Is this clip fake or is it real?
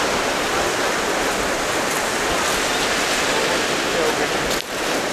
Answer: real